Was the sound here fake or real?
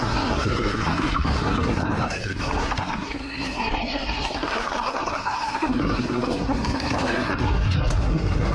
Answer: fake